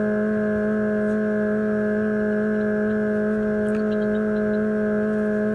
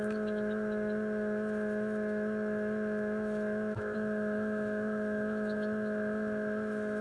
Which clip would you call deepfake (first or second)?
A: second